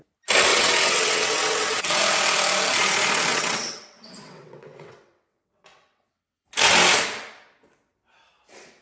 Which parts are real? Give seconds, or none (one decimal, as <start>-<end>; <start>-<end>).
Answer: 0.0-0.5; 2.0-3.3; 6.5-8.8